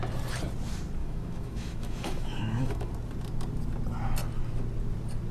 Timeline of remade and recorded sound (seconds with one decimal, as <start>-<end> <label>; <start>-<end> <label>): 0.0-1.0 recorded; 1.0-2.9 remade; 2.9-5.3 recorded